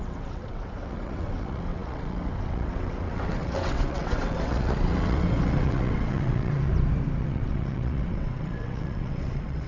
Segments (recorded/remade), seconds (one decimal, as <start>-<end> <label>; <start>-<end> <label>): 0.0-6.7 remade; 6.7-7.2 recorded; 7.2-9.7 remade